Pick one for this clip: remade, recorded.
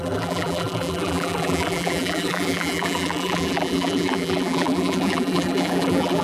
remade